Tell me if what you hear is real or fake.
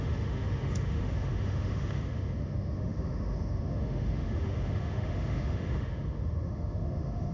fake